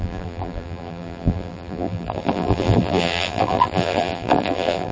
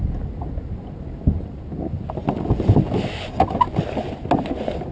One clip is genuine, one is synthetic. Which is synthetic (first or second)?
first